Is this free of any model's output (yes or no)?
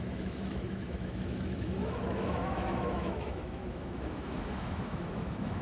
no